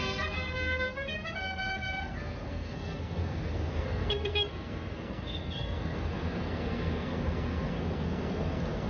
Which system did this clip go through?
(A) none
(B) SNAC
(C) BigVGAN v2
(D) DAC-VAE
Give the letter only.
B